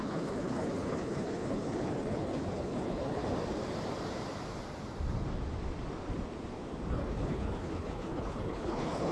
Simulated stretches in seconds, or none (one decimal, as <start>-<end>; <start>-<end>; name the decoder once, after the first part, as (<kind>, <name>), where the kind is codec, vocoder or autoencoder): 0.0-3.2 (codec, HILCodec); 6.9-9.1